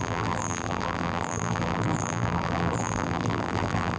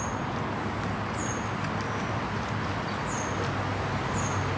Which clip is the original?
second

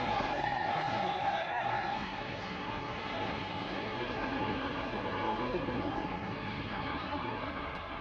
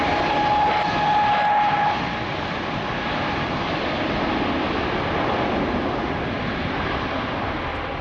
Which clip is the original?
second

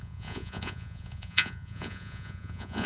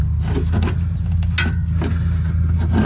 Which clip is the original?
second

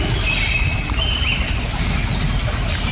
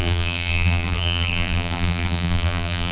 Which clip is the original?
first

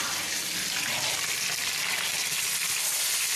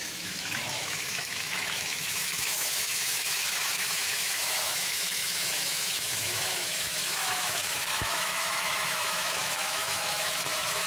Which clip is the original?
first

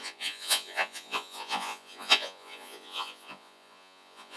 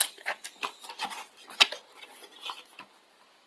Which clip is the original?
second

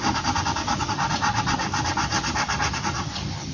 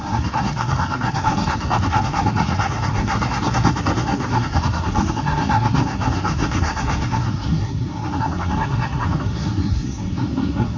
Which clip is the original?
first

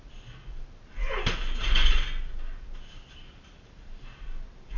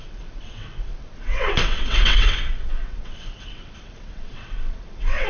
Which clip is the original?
first